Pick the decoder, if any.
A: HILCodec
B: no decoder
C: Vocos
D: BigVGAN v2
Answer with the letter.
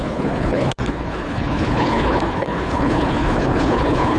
A